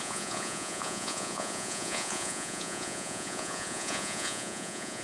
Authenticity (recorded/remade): remade